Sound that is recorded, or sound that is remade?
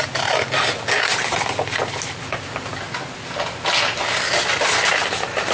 recorded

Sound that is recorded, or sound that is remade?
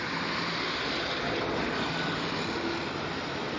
recorded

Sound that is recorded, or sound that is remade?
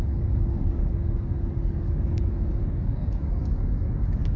remade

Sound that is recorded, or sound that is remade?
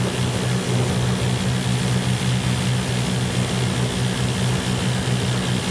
recorded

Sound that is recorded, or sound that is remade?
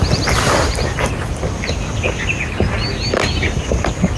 recorded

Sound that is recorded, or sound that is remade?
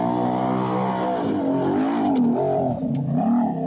recorded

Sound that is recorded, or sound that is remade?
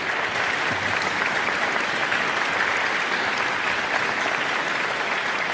recorded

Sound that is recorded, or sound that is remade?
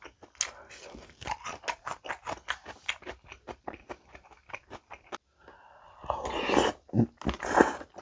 recorded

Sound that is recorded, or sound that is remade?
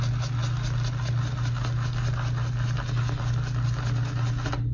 recorded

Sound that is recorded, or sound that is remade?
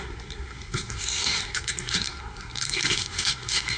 remade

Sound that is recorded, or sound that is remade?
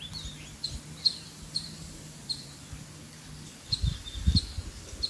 recorded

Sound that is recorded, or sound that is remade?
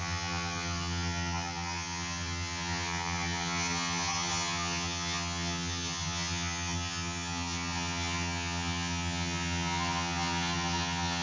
remade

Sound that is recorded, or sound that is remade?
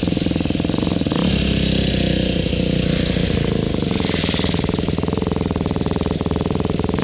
recorded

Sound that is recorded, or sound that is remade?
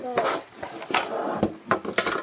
recorded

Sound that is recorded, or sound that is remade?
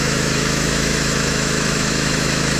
remade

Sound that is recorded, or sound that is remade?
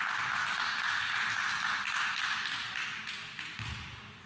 recorded